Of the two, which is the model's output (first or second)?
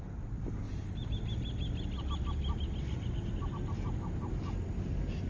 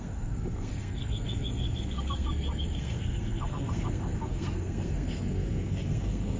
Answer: second